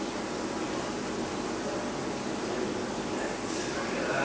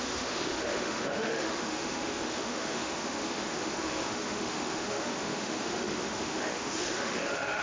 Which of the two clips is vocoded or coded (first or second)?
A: second